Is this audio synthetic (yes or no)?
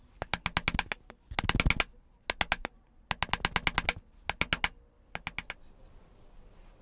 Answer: no